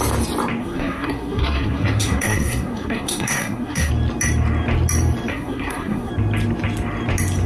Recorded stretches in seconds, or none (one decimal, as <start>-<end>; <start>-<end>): 0.0-0.6; 3.9-5.3; 6.1-7.5